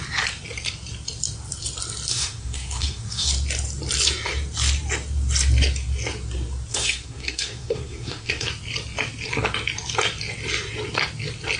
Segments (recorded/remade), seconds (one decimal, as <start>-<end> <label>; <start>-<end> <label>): 0.0-2.1 recorded; 2.1-3.3 remade; 3.3-6.7 recorded; 6.7-8.5 remade; 8.5-11.6 recorded